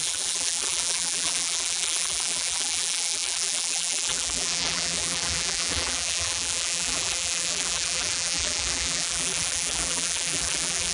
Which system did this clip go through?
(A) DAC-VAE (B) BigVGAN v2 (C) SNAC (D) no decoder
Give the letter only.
B